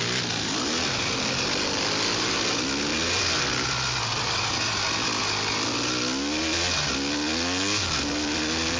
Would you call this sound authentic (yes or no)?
yes